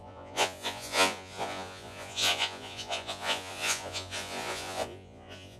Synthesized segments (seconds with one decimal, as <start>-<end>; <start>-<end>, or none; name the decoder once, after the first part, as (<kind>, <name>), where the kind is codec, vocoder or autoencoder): 0.0-5.6 (vocoder, Vocos)

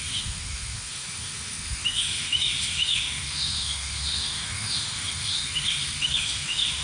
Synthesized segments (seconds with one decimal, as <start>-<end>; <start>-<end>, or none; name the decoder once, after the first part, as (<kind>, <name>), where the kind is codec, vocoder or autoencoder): 0.0-6.8 (autoencoder, DAC-VAE)

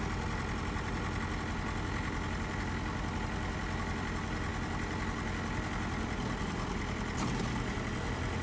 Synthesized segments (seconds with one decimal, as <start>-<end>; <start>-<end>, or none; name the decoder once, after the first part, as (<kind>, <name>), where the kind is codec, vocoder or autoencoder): none

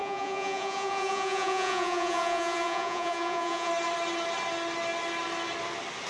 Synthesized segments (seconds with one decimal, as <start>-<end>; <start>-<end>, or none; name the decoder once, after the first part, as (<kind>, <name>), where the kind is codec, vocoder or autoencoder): 0.0-3.7 (vocoder, Vocos)

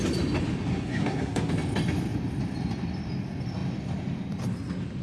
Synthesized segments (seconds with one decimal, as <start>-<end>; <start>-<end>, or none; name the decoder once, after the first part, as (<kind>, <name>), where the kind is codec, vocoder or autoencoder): 0.7-1.5 (codec, SNAC)

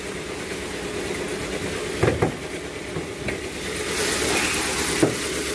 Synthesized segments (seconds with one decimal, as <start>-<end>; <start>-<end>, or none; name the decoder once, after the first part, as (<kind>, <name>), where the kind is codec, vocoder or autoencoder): none

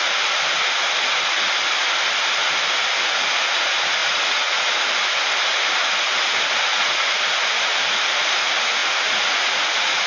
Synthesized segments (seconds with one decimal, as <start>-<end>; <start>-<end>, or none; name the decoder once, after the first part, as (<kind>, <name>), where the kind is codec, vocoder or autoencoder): 4.0-4.6 (vocoder, Vocos); 6.7-7.2; 8.8-10.1